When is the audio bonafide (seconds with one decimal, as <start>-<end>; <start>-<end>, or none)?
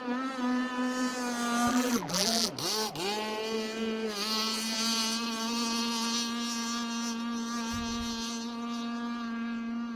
0.0-1.7; 2.5-10.0